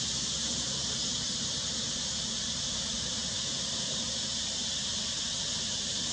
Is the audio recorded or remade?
recorded